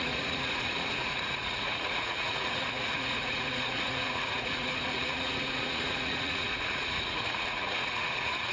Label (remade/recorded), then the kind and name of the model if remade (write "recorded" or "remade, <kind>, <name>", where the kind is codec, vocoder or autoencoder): remade, vocoder, Vocos